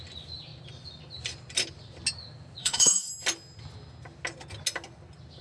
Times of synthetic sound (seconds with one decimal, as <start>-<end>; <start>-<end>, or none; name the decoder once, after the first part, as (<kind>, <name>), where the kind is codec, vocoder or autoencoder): 2.6-3.1 (autoencoder, DAC-VAE)